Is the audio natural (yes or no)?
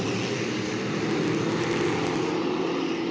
yes